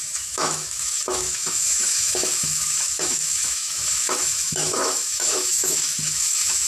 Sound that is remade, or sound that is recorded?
remade